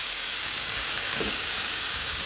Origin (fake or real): fake